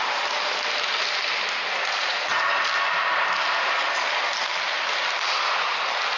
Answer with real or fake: real